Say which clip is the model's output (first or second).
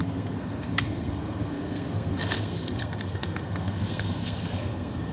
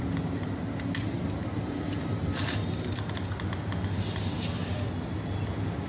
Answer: first